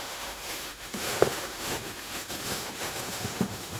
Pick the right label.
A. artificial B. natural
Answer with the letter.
A